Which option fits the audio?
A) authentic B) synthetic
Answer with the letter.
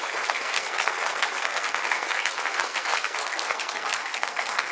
B